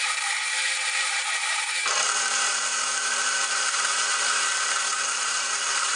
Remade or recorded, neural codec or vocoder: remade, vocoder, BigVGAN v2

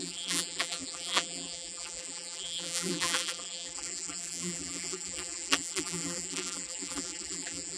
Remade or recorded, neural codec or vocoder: remade, vocoder, BigVGAN v2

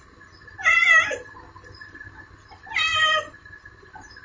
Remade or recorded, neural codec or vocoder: recorded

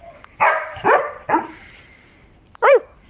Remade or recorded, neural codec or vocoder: remade, vocoder, BigVGAN v2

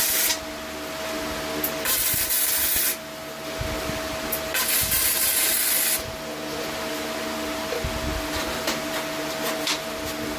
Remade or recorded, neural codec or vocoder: recorded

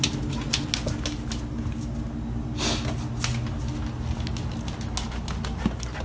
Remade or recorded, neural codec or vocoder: recorded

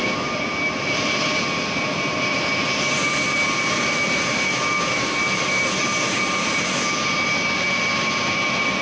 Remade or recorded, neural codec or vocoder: remade, vocoder, BigVGAN v2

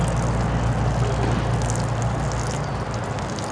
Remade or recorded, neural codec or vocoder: recorded